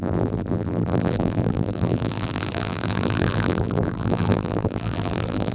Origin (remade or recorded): remade